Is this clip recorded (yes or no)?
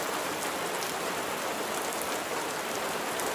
yes